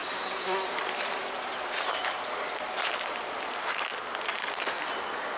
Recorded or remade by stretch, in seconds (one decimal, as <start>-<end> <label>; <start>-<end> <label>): 0.0-3.2 remade; 3.2-5.4 recorded